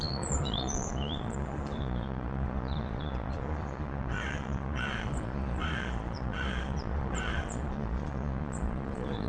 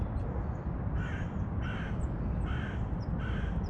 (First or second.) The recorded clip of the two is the second